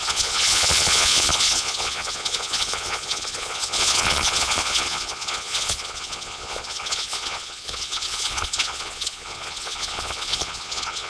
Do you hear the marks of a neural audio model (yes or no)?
yes